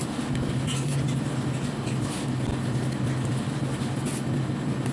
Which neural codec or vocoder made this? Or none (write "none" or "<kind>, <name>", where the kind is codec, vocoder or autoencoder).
none